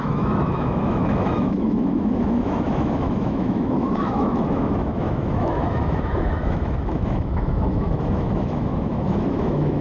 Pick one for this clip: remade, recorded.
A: remade